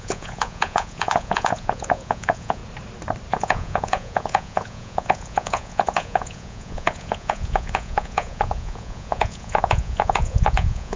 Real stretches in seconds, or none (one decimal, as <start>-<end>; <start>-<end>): 2.6-3.3